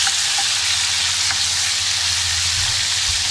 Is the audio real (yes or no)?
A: yes